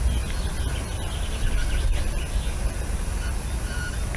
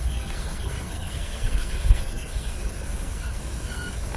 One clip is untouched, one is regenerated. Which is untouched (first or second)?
first